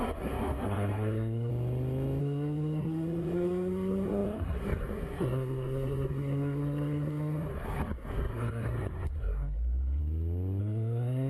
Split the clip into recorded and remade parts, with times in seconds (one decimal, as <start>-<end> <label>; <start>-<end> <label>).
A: 0.0-1.5 remade; 1.5-2.2 recorded; 2.2-10.0 remade; 10.0-10.6 recorded; 10.6-11.3 remade